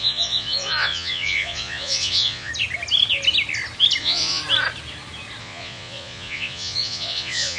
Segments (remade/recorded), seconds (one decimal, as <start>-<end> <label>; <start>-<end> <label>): 0.0-2.5 remade; 2.5-4.0 recorded; 4.0-4.4 remade; 4.4-5.4 recorded; 5.4-7.6 remade